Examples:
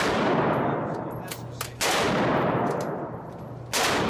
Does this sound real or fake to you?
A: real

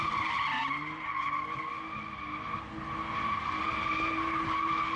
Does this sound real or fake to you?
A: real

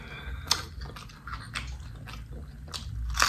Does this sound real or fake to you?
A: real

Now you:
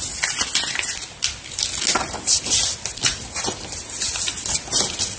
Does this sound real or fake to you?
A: real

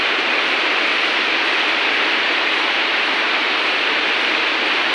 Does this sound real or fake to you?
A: fake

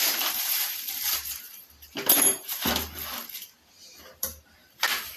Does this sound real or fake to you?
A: fake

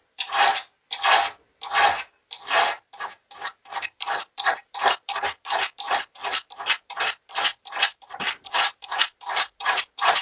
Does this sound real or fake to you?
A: fake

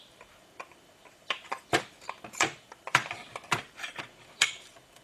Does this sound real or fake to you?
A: fake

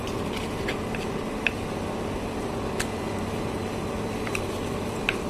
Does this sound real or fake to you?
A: real